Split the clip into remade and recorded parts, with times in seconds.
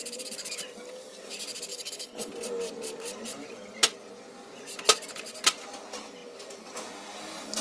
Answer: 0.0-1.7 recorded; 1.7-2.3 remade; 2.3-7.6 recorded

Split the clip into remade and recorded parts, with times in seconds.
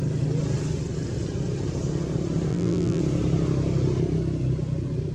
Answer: 0.0-2.5 recorded; 2.5-3.0 remade; 3.0-5.1 recorded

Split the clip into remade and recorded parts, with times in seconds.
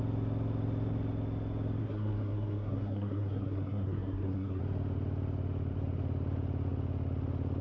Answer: 0.0-1.8 recorded; 1.8-4.6 remade; 4.6-7.6 recorded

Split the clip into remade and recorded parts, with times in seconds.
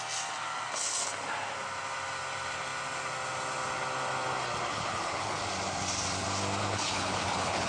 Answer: 0.0-4.7 recorded; 4.7-5.4 remade; 5.4-6.6 recorded; 6.6-7.7 remade